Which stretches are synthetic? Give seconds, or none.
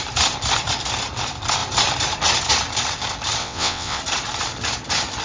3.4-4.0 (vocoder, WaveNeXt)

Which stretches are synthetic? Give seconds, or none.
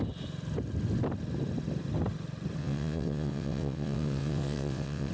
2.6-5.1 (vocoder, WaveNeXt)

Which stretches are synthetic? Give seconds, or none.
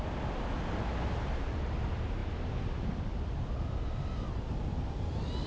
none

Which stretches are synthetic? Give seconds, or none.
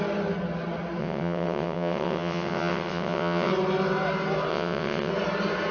1.0-3.5 (vocoder, WaveNeXt); 4.5-5.1